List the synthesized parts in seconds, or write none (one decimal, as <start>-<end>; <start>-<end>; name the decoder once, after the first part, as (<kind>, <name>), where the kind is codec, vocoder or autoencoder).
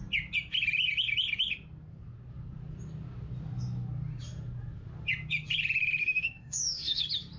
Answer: 6.0-7.0 (autoencoder, DAC-VAE)